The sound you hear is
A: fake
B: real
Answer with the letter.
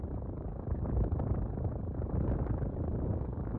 B